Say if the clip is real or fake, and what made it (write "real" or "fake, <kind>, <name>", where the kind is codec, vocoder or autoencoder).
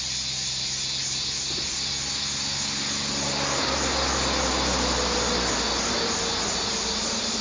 real